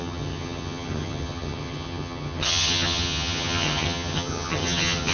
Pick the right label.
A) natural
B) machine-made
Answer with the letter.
B